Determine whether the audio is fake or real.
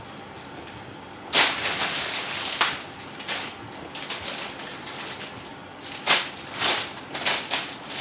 real